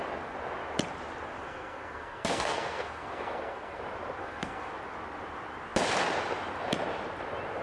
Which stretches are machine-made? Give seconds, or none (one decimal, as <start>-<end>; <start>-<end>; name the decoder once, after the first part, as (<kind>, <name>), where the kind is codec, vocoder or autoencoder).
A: 1.4-3.8 (codec, SNAC); 4.2-4.7